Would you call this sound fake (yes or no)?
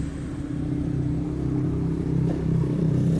yes